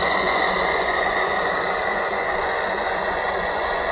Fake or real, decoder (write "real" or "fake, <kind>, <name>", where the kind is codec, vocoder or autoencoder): fake, vocoder, Vocos